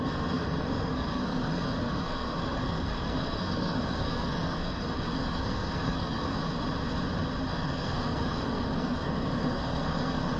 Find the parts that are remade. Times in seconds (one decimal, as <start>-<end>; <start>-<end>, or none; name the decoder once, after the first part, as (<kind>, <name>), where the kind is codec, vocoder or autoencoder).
0.0-6.4 (codec, SNAC); 7.5-10.4